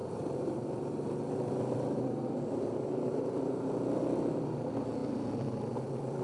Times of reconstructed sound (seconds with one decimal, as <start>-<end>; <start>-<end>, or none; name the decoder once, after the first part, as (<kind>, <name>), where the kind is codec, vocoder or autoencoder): 0.0-3.7 (vocoder, BigVGAN v2)